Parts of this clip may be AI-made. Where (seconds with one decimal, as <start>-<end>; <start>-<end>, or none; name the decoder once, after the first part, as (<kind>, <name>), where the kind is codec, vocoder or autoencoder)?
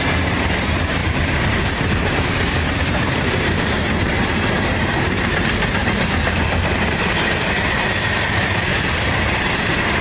0.0-4.1 (vocoder, BigVGAN v2); 4.8-10.0